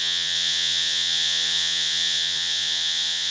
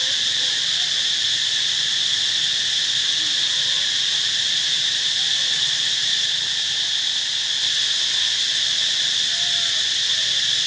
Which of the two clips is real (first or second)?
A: second